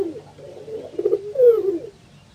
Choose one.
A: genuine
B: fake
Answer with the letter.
A